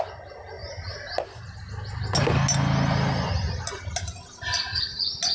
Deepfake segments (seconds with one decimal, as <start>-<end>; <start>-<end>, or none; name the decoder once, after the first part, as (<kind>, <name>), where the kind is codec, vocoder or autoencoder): none

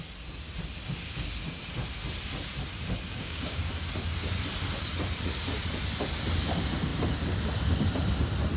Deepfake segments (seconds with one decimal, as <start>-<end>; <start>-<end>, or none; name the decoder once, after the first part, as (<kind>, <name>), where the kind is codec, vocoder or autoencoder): 3.1-3.7 (codec, DAC)

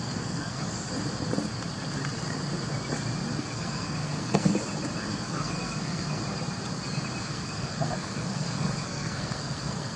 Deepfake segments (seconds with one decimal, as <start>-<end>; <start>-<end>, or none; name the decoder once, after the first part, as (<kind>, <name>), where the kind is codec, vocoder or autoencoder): 0.0-0.6 (codec, SNAC); 3.4-4.5; 5.1-6.2; 7.2-10.0